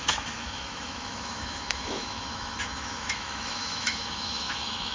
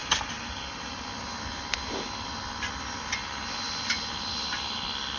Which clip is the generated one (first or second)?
first